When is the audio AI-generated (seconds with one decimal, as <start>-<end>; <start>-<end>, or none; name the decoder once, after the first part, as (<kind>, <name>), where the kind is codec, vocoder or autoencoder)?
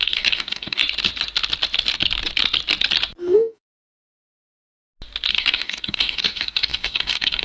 0.0-0.8 (codec, DAC); 3.2-4.5; 5.3-7.4